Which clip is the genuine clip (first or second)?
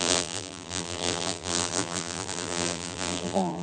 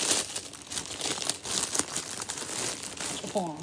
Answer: second